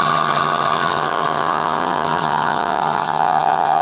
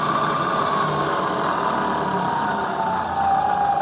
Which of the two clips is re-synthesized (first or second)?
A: first